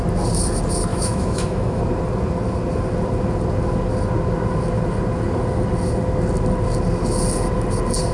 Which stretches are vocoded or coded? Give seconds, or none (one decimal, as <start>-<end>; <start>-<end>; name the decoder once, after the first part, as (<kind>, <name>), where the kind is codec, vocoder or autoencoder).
0.9-1.8 (autoencoder, DAC-VAE)